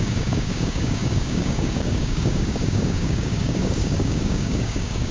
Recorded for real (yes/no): no